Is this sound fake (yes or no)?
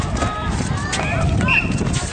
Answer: no